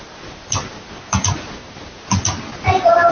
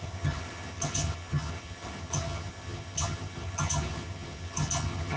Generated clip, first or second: second